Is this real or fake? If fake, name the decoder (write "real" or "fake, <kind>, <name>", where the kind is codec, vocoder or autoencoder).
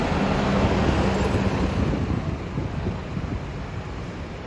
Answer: real